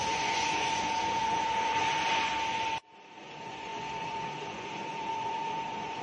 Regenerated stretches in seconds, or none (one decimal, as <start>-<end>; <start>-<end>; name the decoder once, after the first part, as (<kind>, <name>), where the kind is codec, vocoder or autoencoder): 0.0-2.3 (vocoder, Vocos); 3.2-6.0